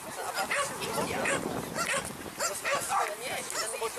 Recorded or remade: recorded